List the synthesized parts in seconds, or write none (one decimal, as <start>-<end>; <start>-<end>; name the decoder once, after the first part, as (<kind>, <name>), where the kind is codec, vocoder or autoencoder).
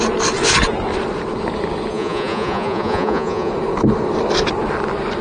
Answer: 1.9-3.5 (vocoder, Vocos)